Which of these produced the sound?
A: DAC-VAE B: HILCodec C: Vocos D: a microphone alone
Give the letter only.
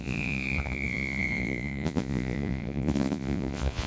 C